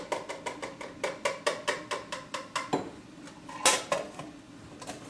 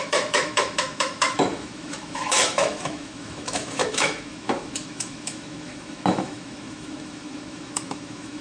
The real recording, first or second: first